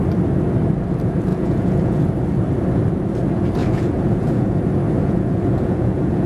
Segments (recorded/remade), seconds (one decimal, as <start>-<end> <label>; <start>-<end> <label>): 0.0-1.3 recorded; 1.3-2.1 remade; 2.1-3.6 recorded; 3.6-4.6 remade; 4.6-5.0 recorded; 5.0-6.3 remade